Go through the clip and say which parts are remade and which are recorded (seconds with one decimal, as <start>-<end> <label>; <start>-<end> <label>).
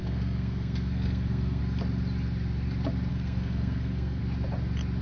0.0-1.6 remade; 1.6-3.1 recorded; 3.1-4.2 remade; 4.2-5.0 recorded